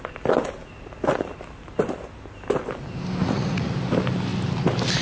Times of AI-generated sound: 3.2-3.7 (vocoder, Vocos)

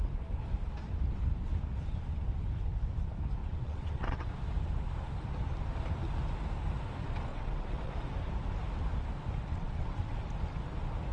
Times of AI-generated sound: 3.4-4.3 (vocoder, WaveNeXt); 7.3-7.9; 9.5-10.2

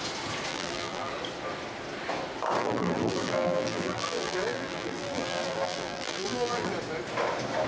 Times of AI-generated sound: 0.5-1.1 (vocoder, BigVGAN v2); 2.6-6.7